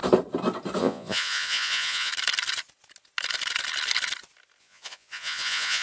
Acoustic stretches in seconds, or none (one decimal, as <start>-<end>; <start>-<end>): 0.0-0.8; 2.1-4.6